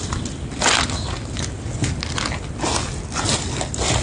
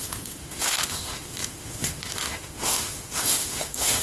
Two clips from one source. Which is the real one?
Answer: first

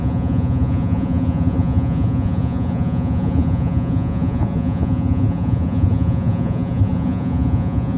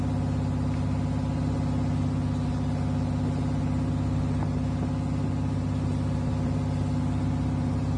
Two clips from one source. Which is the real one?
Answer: second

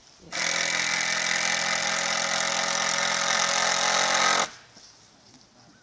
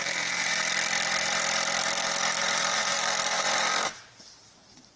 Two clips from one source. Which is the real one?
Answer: first